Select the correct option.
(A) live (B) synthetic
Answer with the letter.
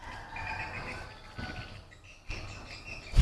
A